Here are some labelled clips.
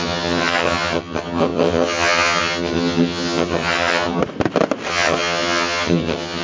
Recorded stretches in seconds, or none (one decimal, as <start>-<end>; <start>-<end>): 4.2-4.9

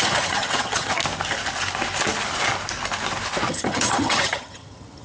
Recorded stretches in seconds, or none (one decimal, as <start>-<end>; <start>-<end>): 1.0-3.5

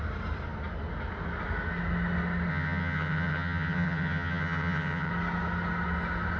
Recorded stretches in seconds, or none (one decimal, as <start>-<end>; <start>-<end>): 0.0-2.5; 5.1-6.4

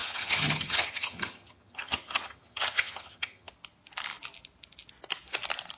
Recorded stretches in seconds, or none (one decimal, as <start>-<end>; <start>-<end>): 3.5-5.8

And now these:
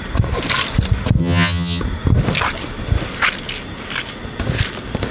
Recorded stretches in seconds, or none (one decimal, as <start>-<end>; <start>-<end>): 0.0-1.2; 1.8-5.1

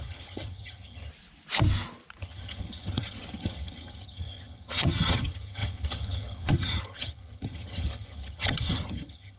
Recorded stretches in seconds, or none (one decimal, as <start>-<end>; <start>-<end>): 1.1-2.2